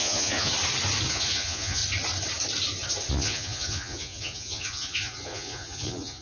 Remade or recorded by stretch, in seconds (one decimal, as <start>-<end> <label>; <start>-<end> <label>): 0.0-0.5 remade; 0.5-1.1 recorded; 1.1-1.8 remade; 1.8-3.1 recorded; 3.1-6.2 remade